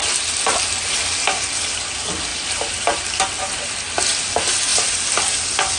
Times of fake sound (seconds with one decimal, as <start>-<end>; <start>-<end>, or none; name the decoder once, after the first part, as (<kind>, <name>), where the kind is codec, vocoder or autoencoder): none